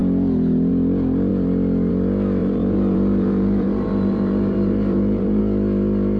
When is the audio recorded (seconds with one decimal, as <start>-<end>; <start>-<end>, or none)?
0.0-2.4; 5.4-6.2